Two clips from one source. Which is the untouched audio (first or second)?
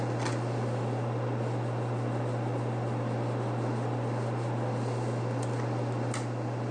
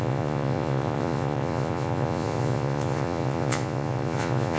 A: first